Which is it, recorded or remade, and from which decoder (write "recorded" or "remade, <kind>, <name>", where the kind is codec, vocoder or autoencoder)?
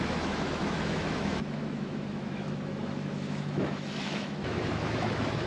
remade, autoencoder, DAC-VAE